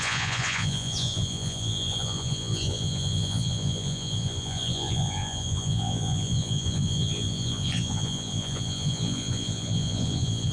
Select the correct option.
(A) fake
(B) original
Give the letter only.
A